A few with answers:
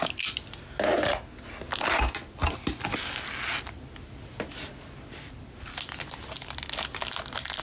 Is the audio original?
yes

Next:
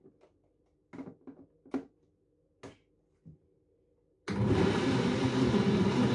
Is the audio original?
yes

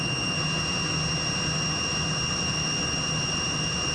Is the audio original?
yes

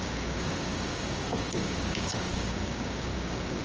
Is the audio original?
no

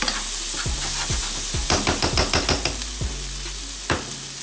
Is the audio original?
yes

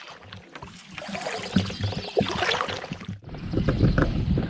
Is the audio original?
yes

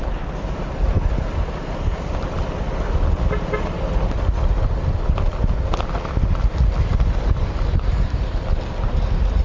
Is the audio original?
yes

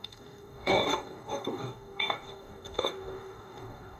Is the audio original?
no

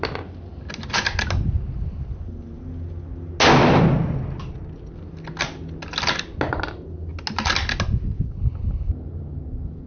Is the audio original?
yes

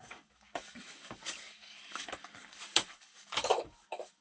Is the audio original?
no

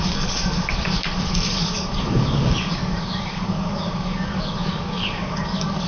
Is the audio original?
no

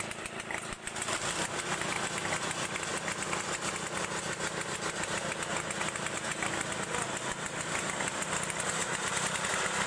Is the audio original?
yes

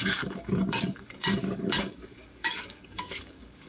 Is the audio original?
no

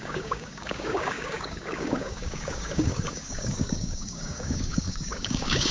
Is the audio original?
no